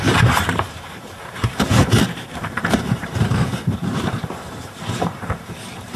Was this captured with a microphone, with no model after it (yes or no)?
no